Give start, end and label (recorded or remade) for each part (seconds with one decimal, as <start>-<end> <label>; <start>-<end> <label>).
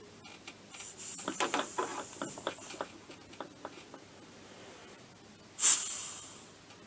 0.0-6.9 recorded